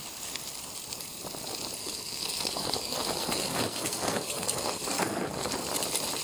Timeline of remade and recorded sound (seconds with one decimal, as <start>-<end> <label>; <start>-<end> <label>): 0.0-1.8 recorded; 1.8-5.5 remade; 5.5-6.2 recorded